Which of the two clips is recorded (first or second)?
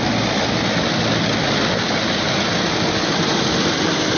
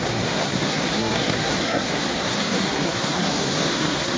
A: first